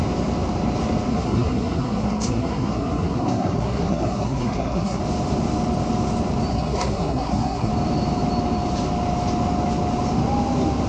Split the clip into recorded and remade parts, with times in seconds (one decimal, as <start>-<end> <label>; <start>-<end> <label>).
0.0-1.1 recorded; 1.1-5.0 remade; 5.0-6.5 recorded; 6.5-7.7 remade; 7.7-10.9 recorded